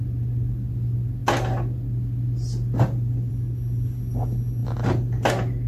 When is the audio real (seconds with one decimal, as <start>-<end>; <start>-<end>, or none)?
0.0-5.7